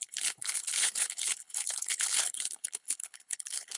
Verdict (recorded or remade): remade